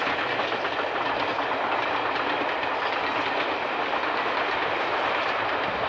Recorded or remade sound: recorded